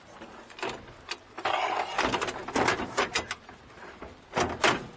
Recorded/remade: recorded